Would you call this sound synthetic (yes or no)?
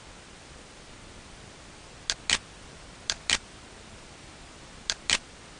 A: no